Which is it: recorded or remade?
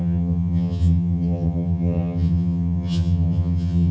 remade